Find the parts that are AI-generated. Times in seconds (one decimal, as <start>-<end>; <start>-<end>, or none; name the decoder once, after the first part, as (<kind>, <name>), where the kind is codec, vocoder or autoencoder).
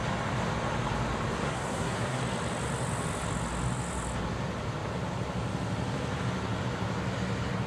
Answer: 1.4-2.2 (codec, SNAC)